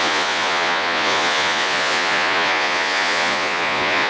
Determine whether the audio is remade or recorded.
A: remade